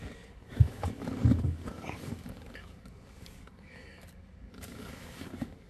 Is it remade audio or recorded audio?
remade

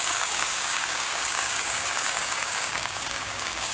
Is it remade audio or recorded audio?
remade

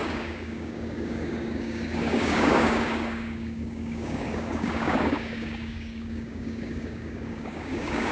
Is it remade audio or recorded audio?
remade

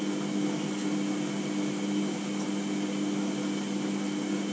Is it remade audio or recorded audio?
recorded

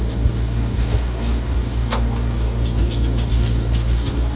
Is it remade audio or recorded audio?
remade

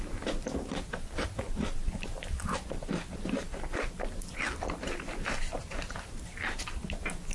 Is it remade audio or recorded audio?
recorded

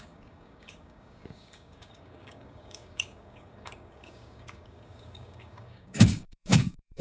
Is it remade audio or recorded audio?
remade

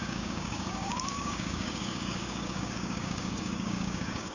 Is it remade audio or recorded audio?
remade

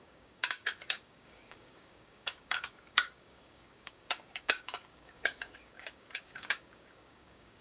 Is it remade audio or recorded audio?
remade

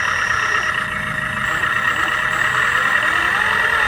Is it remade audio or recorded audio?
recorded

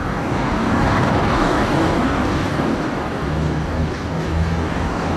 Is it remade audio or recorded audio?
remade